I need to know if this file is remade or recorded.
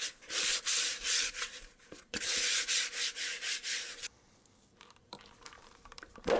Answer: remade